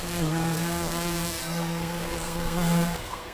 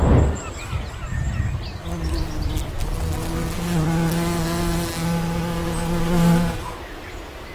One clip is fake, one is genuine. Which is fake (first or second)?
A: first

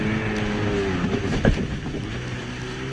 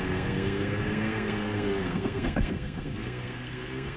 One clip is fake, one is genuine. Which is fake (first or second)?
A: second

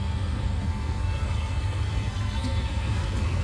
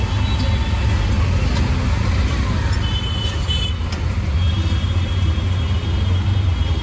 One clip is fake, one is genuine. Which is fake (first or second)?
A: first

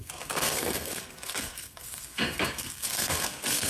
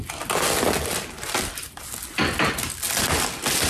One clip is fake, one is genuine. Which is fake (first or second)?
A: first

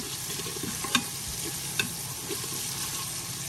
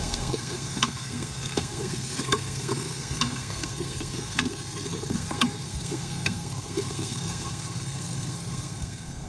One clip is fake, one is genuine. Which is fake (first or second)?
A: second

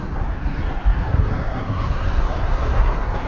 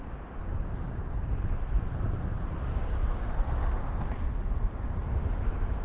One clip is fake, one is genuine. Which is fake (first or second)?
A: first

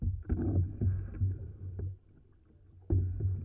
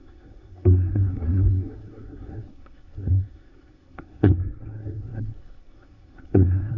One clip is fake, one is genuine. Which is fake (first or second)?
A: second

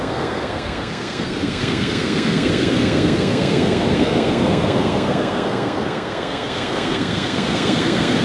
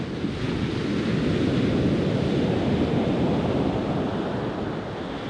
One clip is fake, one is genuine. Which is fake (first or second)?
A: first